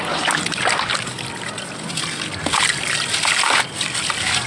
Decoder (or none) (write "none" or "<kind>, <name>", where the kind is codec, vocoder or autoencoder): none